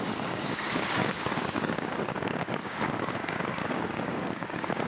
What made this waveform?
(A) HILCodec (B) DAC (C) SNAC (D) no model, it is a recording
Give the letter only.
B